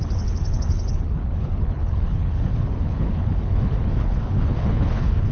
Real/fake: fake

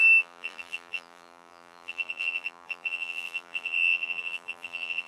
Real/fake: fake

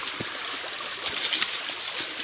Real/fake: real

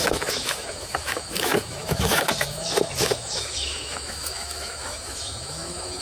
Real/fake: fake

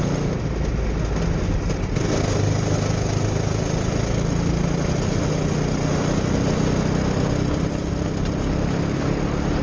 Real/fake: real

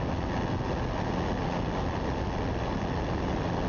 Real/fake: real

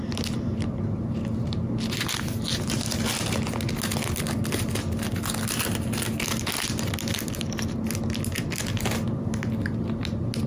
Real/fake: real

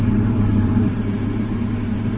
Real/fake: fake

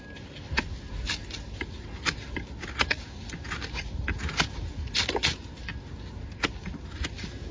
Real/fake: real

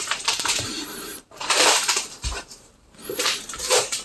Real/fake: fake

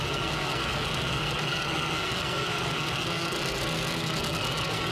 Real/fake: fake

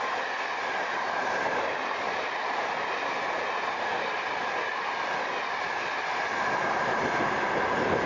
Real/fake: real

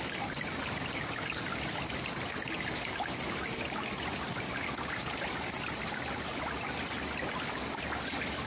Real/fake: real